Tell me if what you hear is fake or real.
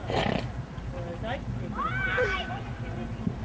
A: real